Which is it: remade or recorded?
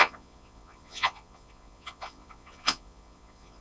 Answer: remade